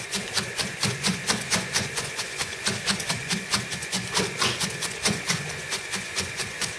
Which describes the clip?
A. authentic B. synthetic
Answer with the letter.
B